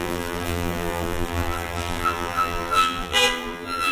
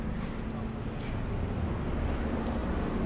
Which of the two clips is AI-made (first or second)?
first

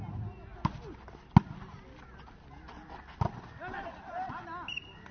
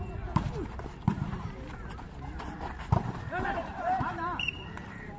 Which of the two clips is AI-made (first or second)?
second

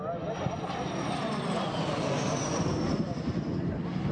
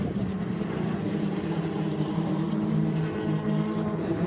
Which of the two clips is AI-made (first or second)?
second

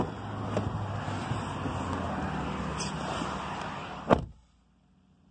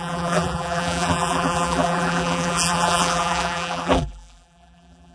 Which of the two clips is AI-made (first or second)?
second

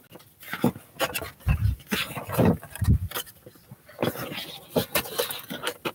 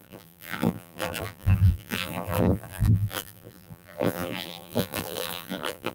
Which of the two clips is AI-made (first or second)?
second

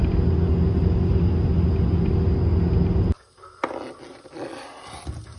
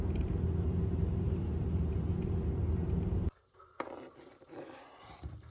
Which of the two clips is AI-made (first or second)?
second